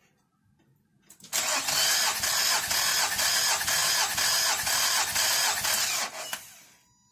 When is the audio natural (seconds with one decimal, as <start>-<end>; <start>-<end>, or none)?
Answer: 0.0-7.1